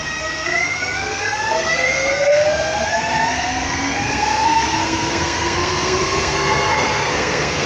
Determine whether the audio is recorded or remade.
remade